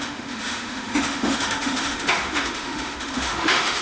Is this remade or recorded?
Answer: remade